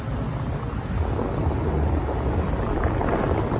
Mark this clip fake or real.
real